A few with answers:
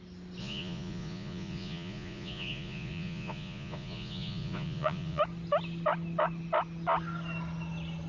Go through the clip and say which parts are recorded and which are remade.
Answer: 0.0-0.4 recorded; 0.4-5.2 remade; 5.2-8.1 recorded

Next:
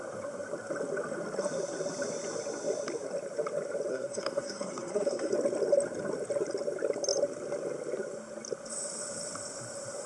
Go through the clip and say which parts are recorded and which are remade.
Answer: 0.0-3.9 recorded; 3.9-5.3 remade; 5.3-10.1 recorded

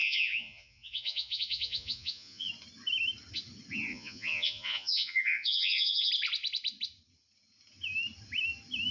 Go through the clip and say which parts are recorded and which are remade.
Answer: 0.0-2.5 remade; 2.5-3.9 recorded; 3.9-6.1 remade; 6.1-8.9 recorded

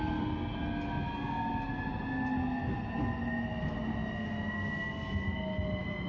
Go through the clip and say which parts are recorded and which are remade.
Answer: 0.0-6.1 recorded

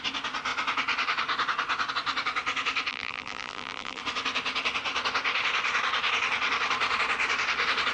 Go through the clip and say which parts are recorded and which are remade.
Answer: 0.0-2.9 recorded; 2.9-4.0 remade; 4.0-7.9 recorded

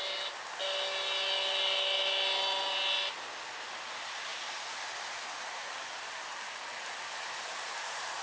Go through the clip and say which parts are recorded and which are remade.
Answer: 0.0-8.2 recorded

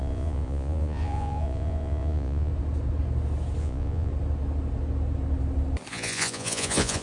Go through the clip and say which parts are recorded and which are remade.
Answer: 0.0-2.5 remade; 2.5-3.6 recorded; 3.6-4.1 remade; 4.1-5.9 recorded; 5.9-7.0 remade

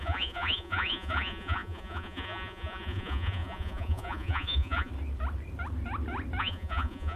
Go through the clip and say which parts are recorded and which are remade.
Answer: 0.0-4.9 remade; 4.9-6.4 recorded; 6.4-7.2 remade